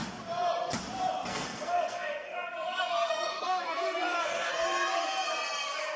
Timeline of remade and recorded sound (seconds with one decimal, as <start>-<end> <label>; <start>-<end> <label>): 0.0-1.3 recorded; 1.3-4.5 remade; 4.5-6.0 recorded